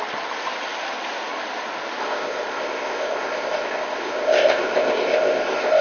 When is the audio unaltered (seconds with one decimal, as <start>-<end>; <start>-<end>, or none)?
0.0-2.0